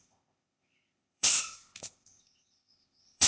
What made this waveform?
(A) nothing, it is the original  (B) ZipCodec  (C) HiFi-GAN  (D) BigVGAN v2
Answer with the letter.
B